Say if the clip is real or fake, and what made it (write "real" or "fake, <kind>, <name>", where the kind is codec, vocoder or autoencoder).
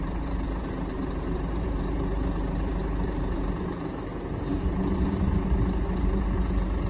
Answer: fake, vocoder, BigVGAN v2